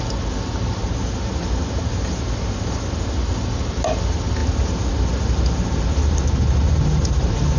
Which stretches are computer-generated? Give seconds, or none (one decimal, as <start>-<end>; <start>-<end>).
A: 0.8-2.9; 4.4-7.6